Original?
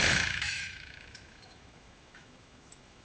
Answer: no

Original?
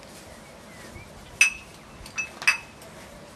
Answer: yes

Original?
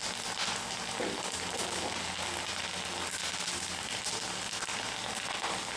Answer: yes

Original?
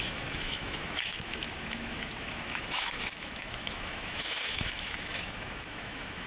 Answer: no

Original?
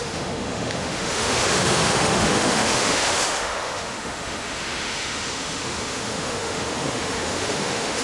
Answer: no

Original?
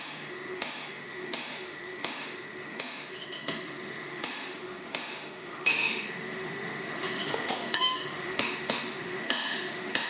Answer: no